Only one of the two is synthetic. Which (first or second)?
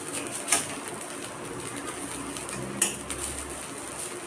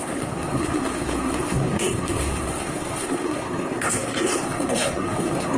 second